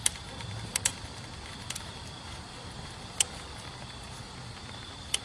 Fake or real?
fake